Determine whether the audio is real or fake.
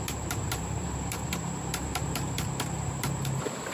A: fake